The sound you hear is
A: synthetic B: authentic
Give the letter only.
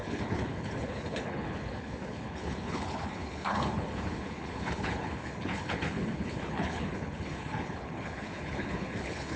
A